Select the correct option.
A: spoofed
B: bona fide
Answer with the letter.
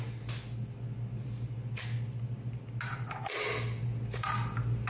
B